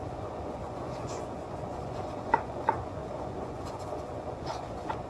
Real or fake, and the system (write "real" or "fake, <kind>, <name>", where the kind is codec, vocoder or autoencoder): fake, vocoder, Vocos